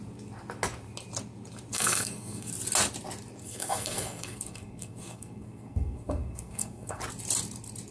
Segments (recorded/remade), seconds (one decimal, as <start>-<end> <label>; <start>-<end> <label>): 0.0-1.7 recorded; 1.7-2.5 remade; 2.5-3.4 recorded; 3.4-7.0 remade; 7.0-7.9 recorded